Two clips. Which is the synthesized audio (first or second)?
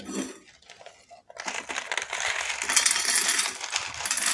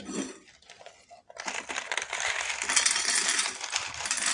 second